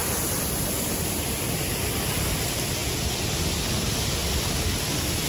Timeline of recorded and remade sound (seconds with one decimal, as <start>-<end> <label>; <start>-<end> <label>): 0.0-0.8 remade; 0.8-5.3 recorded